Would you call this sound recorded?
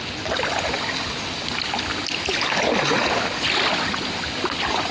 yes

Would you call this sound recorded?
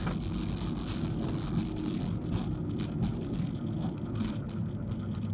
yes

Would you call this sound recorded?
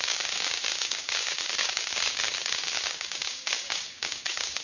no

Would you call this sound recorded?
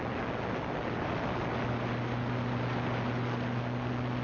yes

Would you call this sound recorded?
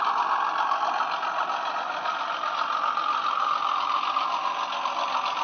yes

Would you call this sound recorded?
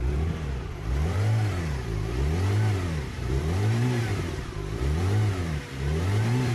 no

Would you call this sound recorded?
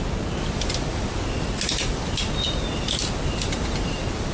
yes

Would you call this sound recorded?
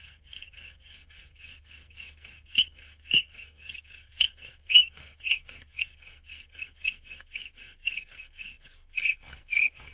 no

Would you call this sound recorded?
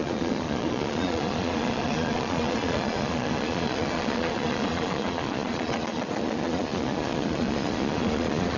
no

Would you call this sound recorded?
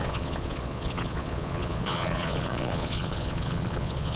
no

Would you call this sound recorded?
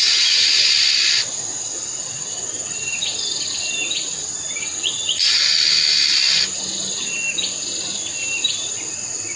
yes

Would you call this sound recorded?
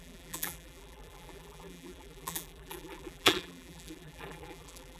no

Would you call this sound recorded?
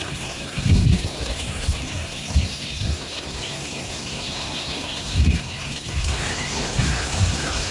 no